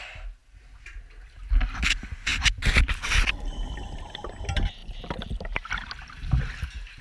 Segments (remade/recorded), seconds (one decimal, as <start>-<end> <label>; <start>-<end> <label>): 0.0-7.0 recorded